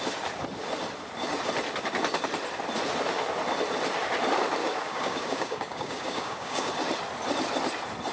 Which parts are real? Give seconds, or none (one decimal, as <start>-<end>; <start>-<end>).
0.0-4.6; 6.7-8.1